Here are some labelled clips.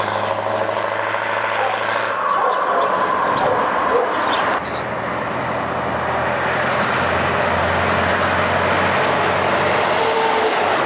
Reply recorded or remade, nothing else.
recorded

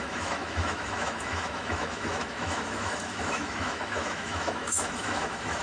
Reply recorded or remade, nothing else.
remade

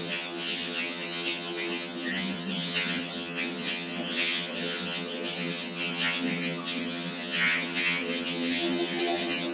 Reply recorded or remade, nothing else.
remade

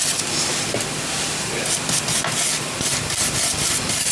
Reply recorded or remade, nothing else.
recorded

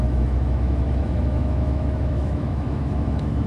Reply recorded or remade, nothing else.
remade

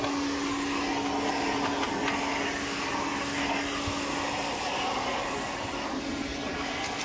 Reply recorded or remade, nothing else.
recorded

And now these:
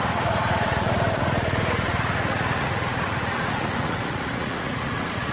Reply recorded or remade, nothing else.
remade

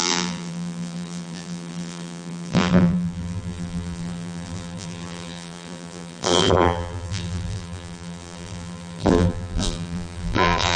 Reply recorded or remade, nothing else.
remade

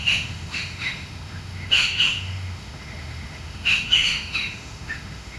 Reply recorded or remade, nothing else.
remade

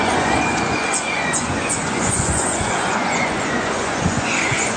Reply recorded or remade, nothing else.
remade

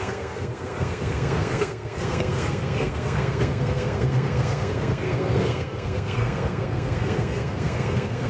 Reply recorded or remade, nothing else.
remade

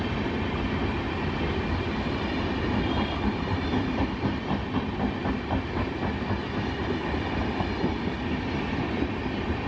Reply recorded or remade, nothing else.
recorded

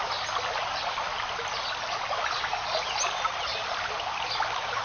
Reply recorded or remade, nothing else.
recorded